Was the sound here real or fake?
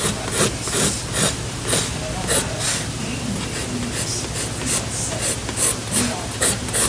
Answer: real